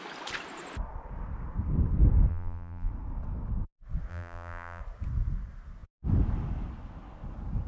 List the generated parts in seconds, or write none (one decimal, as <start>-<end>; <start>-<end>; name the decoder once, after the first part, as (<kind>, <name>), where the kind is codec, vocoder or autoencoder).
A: 2.3-2.9 (vocoder, BigVGAN v2); 4.1-4.8